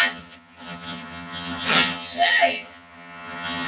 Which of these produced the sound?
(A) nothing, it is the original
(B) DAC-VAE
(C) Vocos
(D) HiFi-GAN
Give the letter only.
D